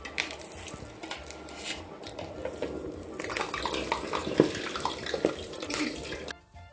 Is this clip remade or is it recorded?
recorded